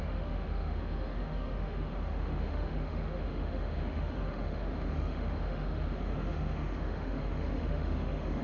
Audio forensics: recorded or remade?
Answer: remade